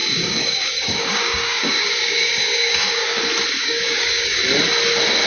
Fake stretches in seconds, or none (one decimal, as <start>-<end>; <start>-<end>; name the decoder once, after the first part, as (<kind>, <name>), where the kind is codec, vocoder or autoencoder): 0.0-3.2 (codec, DAC); 3.6-4.4